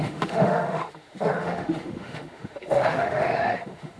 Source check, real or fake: fake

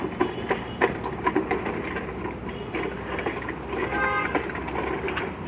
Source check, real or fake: real